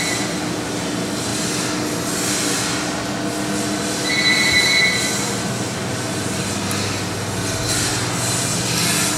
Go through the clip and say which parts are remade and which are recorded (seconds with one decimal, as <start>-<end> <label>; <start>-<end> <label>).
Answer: 0.0-9.2 recorded